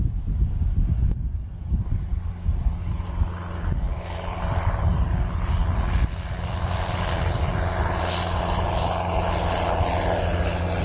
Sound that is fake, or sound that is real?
real